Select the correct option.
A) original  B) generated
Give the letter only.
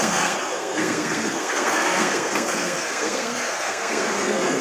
B